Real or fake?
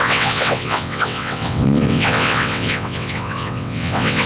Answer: fake